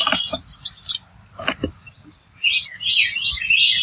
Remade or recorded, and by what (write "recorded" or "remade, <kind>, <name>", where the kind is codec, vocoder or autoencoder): recorded